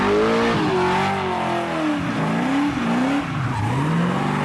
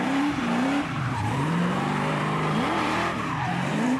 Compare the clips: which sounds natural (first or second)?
first